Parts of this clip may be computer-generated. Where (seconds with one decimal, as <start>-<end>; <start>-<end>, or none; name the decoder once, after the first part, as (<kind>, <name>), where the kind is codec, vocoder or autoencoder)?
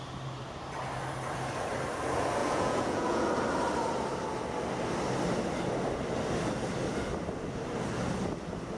2.4-3.3 (vocoder, Vocos)